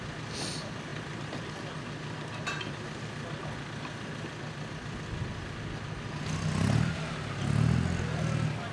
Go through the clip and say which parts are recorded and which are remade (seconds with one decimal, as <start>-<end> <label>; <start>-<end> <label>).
0.0-8.7 recorded